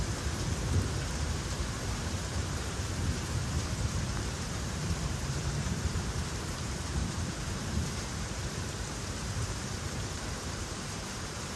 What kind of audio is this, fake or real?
fake